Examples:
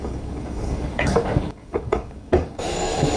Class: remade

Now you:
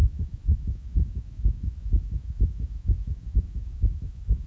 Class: remade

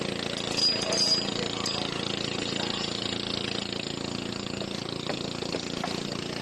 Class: recorded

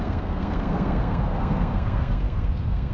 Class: remade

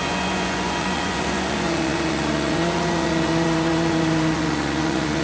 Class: remade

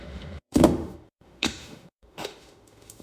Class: remade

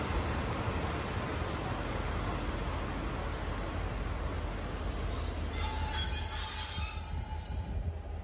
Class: recorded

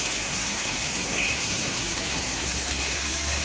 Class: remade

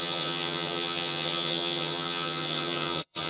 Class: remade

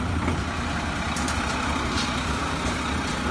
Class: recorded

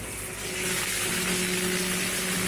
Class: recorded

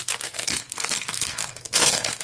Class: remade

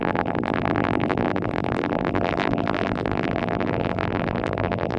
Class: remade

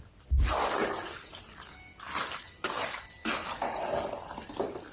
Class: recorded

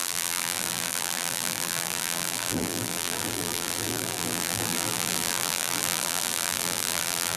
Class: remade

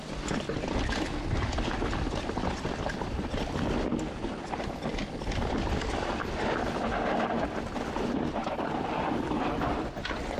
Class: recorded